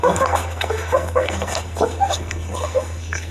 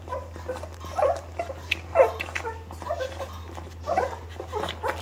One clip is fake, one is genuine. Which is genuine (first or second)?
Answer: second